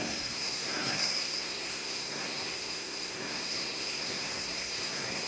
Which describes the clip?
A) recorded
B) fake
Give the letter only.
B